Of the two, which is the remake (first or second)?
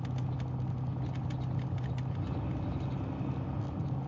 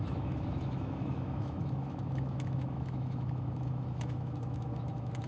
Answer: second